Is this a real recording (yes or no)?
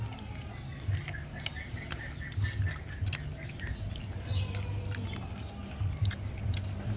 yes